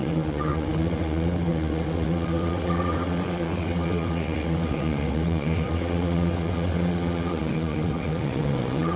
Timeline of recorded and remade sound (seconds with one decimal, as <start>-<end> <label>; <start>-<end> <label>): 0.0-9.0 remade